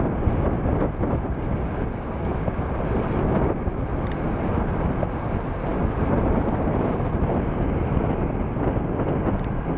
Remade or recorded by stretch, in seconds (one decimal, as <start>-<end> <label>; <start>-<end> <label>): 0.0-2.3 recorded; 2.3-4.5 remade; 4.5-9.8 recorded